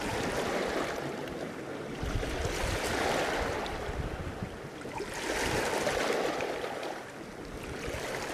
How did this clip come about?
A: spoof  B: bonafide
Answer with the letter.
B